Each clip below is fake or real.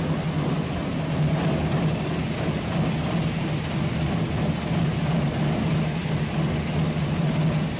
real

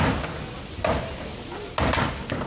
real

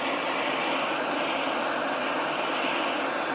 real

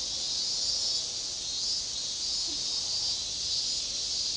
real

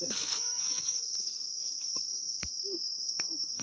fake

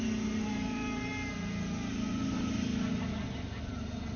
real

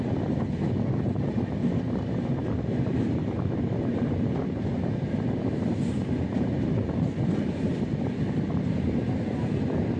real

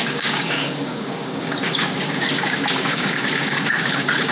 fake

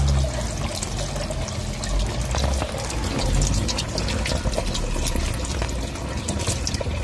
real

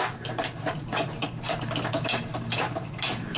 fake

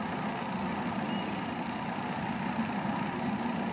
real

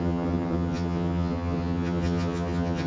fake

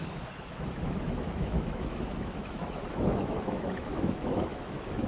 fake